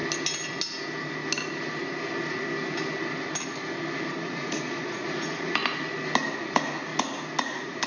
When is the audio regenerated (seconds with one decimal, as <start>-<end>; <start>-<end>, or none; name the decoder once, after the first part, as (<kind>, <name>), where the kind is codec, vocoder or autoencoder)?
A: 4.2-5.6 (vocoder, Vocos); 6.4-6.9; 7.4-7.9